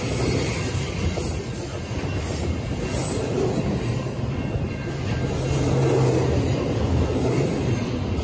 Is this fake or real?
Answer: real